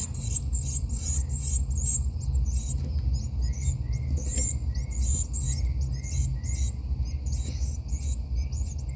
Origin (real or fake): real